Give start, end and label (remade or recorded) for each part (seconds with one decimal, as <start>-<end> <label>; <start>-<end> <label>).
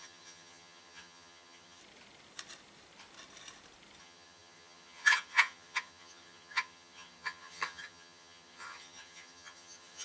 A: 0.0-1.8 remade; 1.8-4.0 recorded; 4.0-10.0 remade